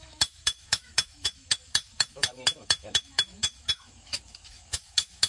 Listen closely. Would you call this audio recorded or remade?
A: remade